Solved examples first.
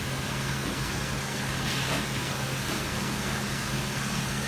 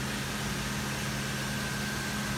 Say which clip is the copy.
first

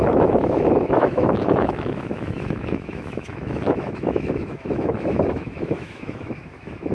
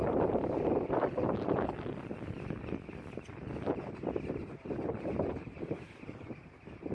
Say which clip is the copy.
first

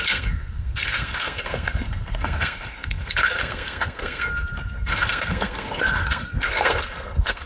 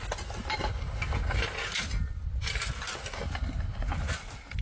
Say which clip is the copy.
first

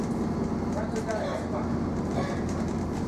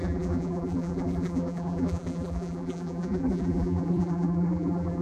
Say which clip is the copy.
second